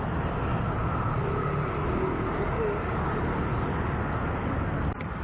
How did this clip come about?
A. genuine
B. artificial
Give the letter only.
A